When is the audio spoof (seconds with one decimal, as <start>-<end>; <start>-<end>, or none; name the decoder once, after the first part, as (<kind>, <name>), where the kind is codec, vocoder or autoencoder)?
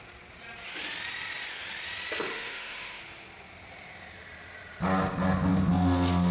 2.3-3.0 (autoencoder, DAC-VAE)